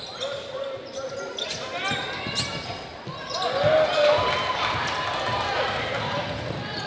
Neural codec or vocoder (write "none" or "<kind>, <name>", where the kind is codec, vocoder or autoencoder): none